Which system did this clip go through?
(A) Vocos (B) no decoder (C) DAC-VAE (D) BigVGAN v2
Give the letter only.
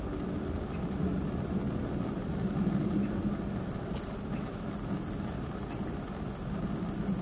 B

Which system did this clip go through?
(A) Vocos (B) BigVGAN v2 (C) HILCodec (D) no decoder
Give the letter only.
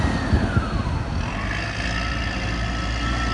D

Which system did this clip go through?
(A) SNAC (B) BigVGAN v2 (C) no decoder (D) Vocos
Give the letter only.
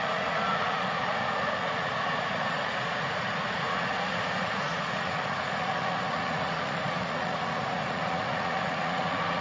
D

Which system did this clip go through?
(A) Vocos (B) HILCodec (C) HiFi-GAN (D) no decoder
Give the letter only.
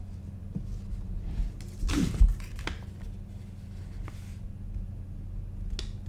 D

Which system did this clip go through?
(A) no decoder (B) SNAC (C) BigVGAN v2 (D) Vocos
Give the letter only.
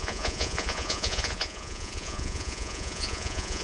D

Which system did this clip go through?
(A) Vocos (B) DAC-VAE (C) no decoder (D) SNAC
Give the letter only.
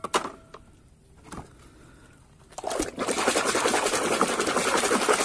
C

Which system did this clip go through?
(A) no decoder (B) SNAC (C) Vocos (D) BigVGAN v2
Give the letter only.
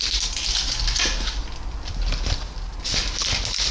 A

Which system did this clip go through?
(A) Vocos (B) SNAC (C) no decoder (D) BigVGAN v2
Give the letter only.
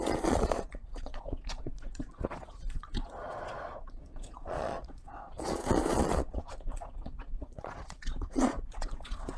A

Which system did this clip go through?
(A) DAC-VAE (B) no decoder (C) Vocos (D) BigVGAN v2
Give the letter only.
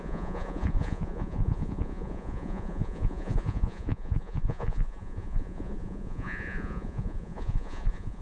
C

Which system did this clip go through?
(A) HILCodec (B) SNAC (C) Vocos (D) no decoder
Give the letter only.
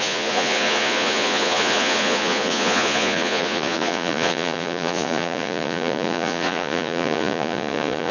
C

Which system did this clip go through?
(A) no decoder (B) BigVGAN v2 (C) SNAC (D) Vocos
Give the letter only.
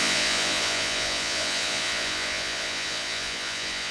D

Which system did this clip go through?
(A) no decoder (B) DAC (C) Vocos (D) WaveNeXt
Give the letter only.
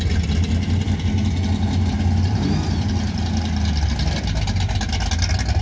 A